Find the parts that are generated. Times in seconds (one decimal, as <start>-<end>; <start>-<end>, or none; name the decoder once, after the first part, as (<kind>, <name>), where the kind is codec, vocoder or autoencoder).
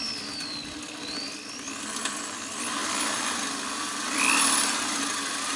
2.8-5.6 (vocoder, BigVGAN v2)